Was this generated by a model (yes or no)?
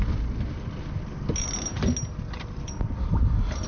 no